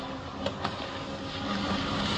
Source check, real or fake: real